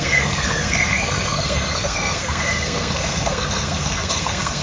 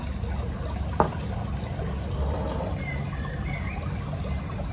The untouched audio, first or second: second